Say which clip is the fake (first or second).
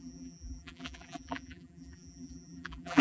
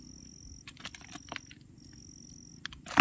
first